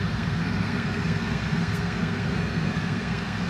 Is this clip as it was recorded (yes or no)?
no